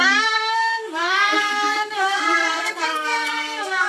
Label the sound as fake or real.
fake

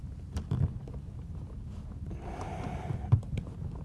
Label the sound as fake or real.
real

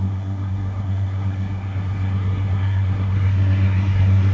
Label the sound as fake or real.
fake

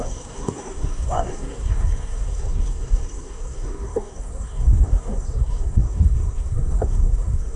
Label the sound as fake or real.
fake